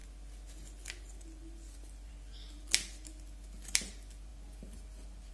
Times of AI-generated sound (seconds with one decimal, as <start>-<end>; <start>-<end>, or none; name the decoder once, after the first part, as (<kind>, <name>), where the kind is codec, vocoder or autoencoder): none